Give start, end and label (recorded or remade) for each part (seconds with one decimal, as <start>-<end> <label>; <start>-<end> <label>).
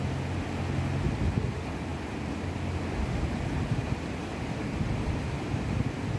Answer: 0.0-4.3 recorded; 4.3-5.8 remade; 5.8-6.2 recorded